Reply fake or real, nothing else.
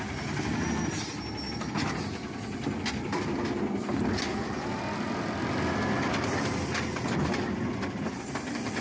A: real